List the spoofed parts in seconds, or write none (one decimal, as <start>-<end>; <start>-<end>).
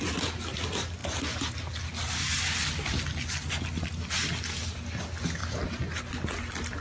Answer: none